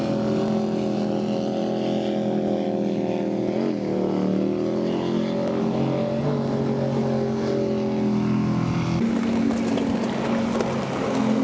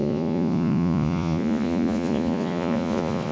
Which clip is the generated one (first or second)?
second